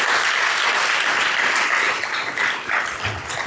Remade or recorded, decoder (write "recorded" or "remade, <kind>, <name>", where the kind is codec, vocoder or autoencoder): recorded